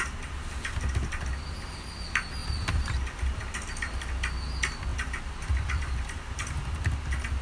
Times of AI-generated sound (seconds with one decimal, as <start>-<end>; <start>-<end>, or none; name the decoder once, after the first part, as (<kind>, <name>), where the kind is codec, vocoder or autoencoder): 2.4-2.9 (vocoder, BigVGAN v2); 4.9-6.9